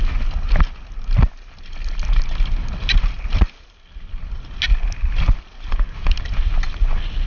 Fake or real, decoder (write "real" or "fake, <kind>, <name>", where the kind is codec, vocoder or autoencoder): real